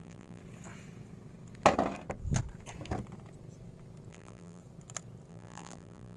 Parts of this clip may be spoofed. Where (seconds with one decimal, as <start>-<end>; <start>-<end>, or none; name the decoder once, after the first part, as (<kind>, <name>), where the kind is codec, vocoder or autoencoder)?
0.0-0.4 (vocoder, BigVGAN v2); 4.1-4.6; 5.3-6.2